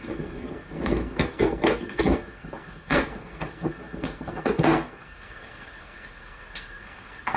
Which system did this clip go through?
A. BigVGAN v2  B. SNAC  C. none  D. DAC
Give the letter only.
B